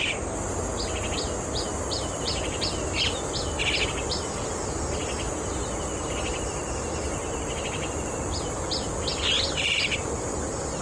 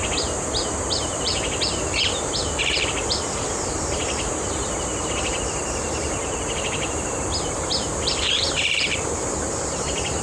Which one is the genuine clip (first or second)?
first